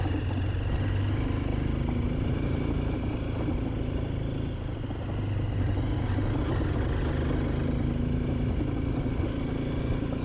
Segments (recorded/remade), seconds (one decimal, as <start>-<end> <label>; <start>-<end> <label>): 0.0-10.2 recorded